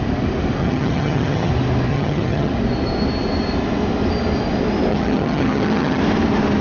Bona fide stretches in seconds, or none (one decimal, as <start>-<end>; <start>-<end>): 0.0-0.6; 1.5-1.9; 2.5-4.9; 6.0-6.6